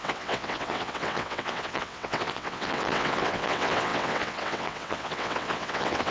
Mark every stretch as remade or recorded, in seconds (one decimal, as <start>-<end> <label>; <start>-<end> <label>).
0.0-6.1 remade